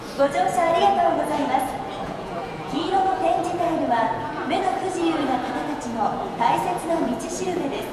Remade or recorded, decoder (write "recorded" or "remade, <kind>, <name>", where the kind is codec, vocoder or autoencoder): remade, vocoder, Vocos